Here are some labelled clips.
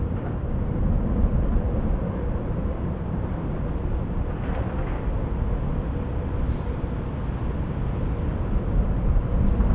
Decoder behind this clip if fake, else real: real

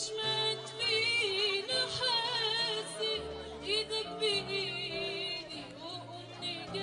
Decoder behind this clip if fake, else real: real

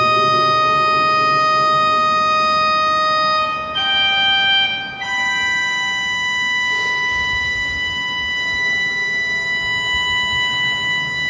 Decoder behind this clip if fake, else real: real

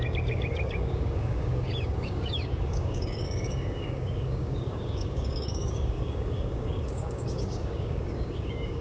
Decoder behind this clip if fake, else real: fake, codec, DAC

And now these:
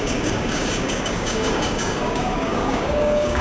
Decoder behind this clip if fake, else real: fake, codec, DAC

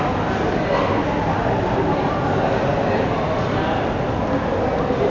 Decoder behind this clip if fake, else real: real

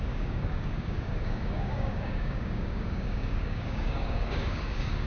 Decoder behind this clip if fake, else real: fake, codec, DAC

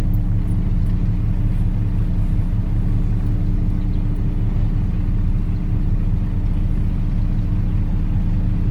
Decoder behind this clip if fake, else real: real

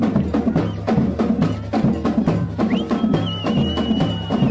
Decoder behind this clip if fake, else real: real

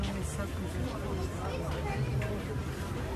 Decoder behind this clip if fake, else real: real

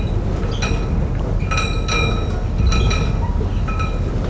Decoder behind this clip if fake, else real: real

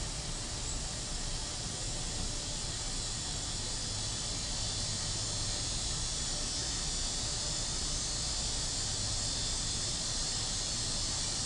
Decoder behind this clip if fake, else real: real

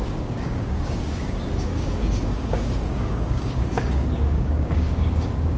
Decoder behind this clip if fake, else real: fake, codec, DAC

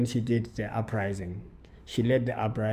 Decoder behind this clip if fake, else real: fake, codec, DAC